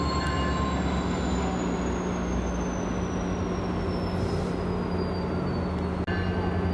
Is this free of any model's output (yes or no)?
yes